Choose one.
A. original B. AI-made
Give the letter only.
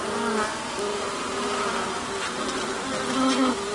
A